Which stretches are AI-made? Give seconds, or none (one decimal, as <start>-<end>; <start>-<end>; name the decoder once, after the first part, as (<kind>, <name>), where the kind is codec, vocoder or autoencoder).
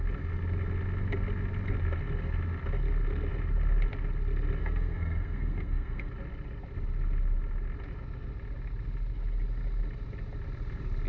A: 4.6-6.1 (codec, SNAC)